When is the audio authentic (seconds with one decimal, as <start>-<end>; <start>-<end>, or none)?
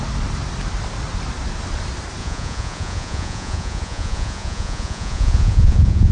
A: 0.0-2.2